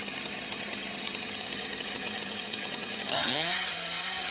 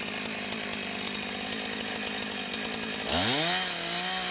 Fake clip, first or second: first